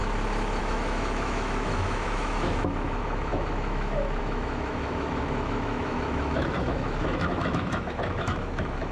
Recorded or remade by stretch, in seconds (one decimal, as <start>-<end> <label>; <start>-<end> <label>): 0.0-0.6 recorded; 0.6-8.9 remade